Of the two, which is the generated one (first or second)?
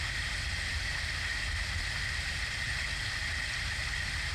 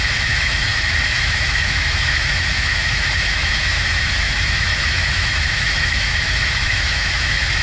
second